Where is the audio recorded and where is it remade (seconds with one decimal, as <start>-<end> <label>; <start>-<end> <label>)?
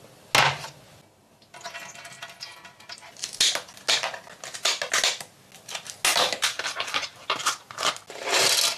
0.0-6.1 recorded; 6.1-7.9 remade; 7.9-8.8 recorded